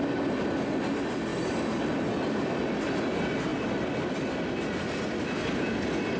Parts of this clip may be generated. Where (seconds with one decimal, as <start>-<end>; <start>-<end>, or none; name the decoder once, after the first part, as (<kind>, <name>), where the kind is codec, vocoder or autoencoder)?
none